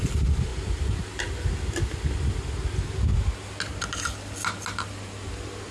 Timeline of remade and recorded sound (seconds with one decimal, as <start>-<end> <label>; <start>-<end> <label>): 0.0-5.7 recorded